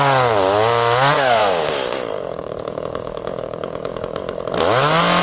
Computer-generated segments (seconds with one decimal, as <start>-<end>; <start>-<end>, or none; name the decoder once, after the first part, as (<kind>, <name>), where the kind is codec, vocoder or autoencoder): 1.4-4.4 (codec, DAC)